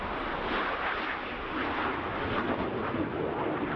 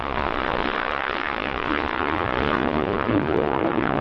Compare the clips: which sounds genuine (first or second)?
first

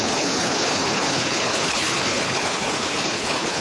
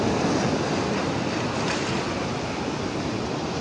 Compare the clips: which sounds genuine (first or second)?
second